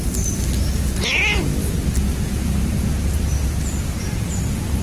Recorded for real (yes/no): yes